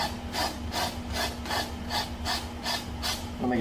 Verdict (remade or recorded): recorded